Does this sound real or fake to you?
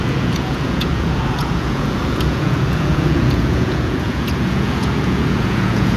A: fake